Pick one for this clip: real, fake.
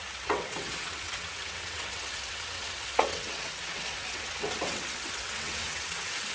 fake